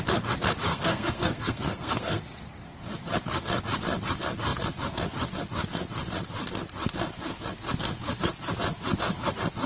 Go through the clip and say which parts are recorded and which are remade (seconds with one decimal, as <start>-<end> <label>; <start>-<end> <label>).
0.0-0.7 recorded; 0.7-2.2 remade; 2.2-9.7 recorded